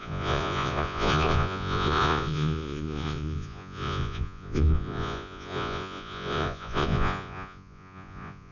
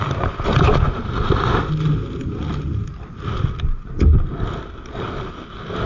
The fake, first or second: first